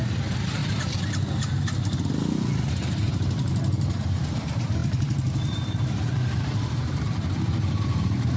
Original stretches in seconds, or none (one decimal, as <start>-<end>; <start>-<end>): 0.6-2.7